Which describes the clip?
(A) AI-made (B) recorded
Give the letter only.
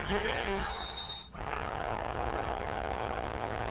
A